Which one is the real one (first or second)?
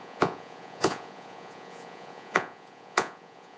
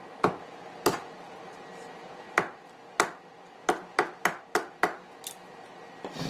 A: second